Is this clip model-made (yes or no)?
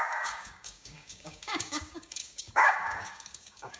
yes